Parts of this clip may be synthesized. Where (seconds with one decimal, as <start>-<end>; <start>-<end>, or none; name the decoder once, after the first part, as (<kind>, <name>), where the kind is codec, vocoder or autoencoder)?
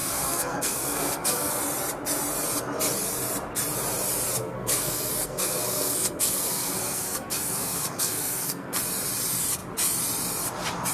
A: 0.0-1.6 (codec, SNAC); 4.4-8.8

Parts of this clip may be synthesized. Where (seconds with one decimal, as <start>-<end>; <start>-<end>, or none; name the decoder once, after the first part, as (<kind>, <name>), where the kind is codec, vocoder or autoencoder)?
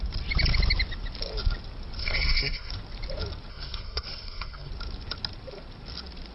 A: 2.0-2.7 (codec, SNAC); 3.5-4.7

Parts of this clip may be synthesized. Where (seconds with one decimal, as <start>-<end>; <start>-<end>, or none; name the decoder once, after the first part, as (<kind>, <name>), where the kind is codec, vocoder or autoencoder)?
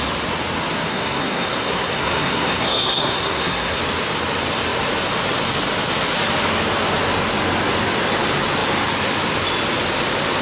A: 0.9-3.8 (codec, SNAC)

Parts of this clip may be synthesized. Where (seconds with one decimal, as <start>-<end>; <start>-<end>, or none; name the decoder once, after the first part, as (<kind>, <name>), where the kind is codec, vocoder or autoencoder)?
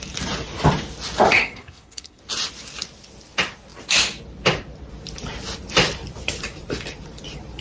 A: 1.4-2.2 (codec, SNAC)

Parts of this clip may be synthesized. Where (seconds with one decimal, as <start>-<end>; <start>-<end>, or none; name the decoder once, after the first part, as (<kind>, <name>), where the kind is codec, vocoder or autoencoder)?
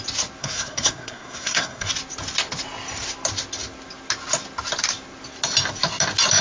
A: 0.4-1.9 (codec, SNAC)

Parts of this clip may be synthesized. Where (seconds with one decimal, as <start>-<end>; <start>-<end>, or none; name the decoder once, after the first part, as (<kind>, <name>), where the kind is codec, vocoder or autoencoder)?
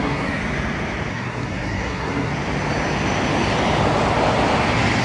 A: 0.0-0.4 (codec, SNAC); 1.1-2.3